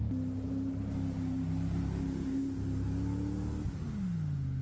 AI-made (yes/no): no